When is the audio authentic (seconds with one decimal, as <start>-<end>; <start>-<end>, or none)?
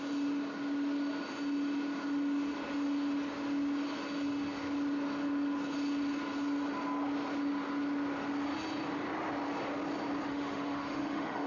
0.0-10.3